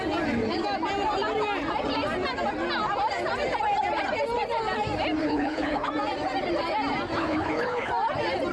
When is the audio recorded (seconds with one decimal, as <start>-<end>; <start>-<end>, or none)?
0.0-5.2; 5.9-7.2; 7.9-8.5